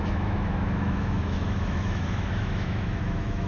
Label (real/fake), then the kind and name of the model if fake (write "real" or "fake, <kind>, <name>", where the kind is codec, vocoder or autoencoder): fake, autoencoder, DAC-VAE